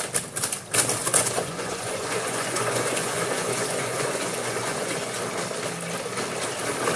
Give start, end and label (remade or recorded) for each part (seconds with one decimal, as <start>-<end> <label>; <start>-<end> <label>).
0.0-1.0 recorded; 1.0-5.2 remade; 5.2-7.0 recorded